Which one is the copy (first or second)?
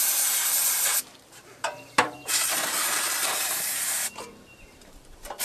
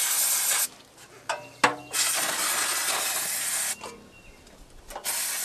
first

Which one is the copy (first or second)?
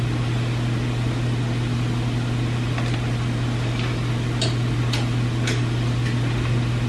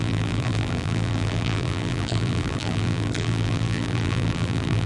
second